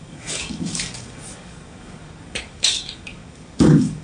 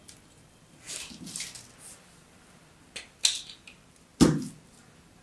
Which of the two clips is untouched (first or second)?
second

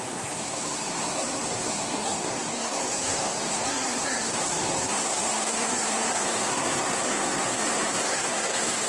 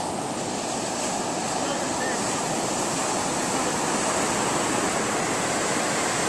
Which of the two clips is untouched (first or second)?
second